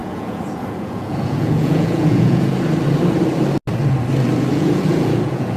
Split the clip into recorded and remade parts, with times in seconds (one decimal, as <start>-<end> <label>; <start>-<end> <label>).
0.0-2.5 remade; 2.5-4.5 recorded; 4.5-5.6 remade